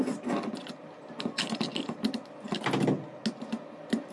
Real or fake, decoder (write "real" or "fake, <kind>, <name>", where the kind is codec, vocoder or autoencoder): real